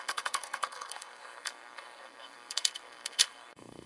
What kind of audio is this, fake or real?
fake